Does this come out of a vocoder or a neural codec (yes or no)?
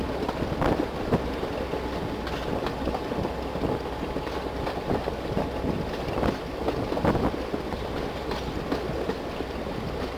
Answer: no